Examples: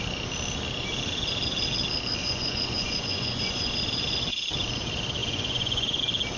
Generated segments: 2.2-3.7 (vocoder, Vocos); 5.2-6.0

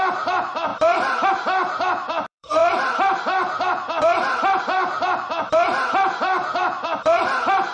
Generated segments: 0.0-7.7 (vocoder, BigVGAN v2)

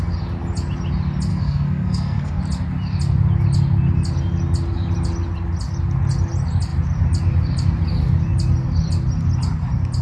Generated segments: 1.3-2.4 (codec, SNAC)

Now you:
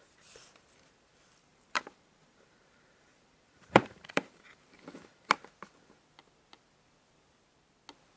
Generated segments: 1.5-5.3 (vocoder, BigVGAN v2)